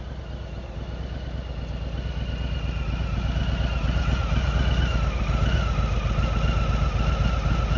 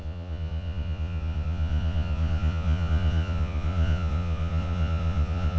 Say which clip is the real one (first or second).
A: first